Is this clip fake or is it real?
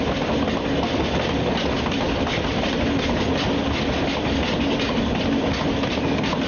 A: real